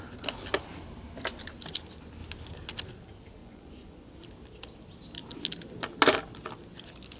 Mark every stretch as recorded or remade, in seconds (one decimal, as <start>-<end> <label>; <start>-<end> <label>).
0.0-3.4 recorded; 3.4-4.1 remade; 4.1-7.2 recorded